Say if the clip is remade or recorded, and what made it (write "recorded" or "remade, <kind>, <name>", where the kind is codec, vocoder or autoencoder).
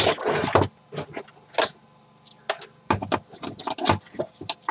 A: recorded